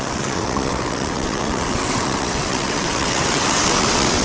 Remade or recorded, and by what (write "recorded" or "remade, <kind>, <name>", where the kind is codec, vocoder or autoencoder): remade, vocoder, WaveNeXt